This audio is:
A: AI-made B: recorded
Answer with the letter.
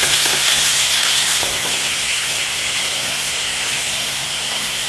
A